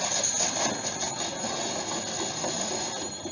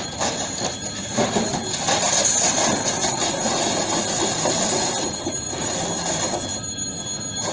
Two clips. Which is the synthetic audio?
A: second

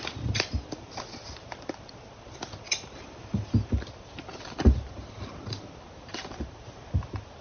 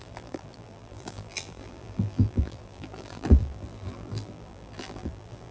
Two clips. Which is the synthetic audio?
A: second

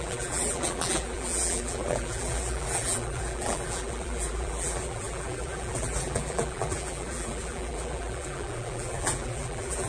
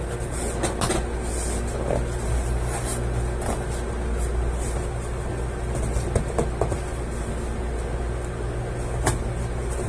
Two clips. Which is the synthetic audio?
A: first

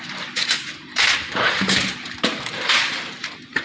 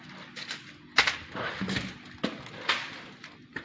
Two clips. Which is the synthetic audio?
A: first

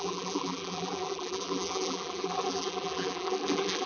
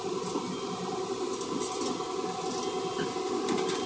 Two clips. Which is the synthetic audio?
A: first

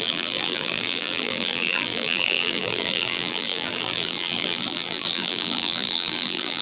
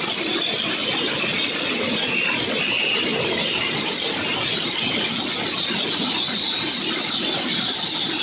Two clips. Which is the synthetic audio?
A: first